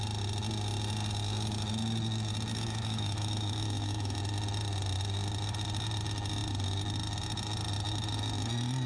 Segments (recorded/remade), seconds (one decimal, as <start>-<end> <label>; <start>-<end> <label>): 0.0-2.5 recorded; 2.5-4.2 remade; 4.2-8.9 recorded